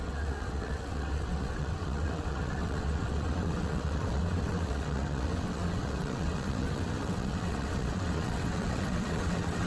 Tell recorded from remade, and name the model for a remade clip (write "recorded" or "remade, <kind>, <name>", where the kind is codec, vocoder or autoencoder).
remade, vocoder, WaveNeXt